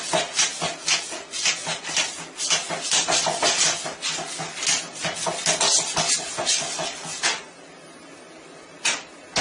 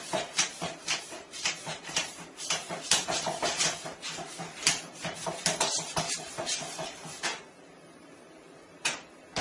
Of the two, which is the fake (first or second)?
second